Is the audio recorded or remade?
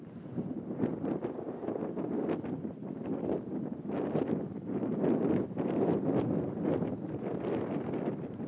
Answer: recorded